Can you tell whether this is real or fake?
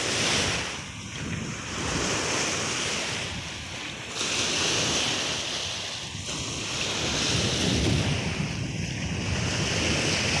real